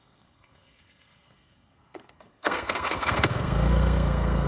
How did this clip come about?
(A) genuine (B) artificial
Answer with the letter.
B